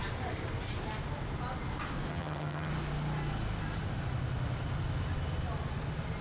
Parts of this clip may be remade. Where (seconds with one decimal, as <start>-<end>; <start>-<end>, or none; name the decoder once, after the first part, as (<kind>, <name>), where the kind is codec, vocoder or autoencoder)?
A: 2.1-2.7 (vocoder, HiFi-GAN)